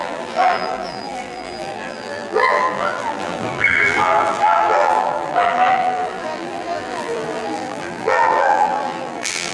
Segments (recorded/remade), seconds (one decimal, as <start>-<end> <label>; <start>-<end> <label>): 0.0-9.5 remade